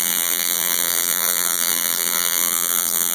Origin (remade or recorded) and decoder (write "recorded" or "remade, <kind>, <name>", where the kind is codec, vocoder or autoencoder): remade, vocoder, BigVGAN v2